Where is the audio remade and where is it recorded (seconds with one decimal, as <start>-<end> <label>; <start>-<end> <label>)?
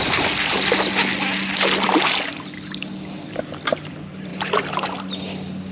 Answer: 0.0-0.5 remade; 0.5-3.9 recorded; 3.9-5.7 remade